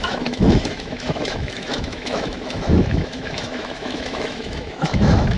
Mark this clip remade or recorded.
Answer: remade